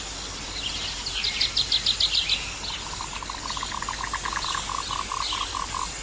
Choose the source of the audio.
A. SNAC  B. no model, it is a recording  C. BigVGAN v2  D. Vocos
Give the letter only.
B